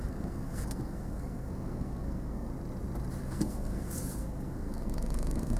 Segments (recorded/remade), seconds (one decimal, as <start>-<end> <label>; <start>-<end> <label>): 0.0-2.5 remade; 2.5-3.2 recorded; 3.2-5.6 remade